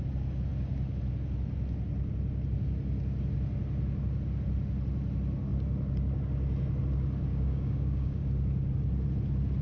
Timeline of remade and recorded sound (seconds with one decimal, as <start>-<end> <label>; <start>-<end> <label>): 0.0-7.3 recorded; 7.3-8.2 remade; 8.2-9.6 recorded